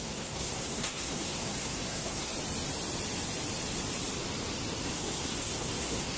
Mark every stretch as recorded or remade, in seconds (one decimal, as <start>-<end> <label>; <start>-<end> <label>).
0.0-2.3 remade; 2.3-4.8 recorded; 4.8-6.2 remade